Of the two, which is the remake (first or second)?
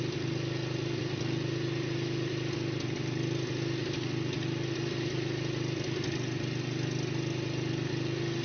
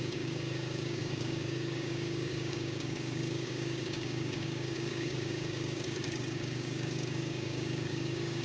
second